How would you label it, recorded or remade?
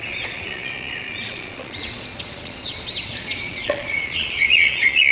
remade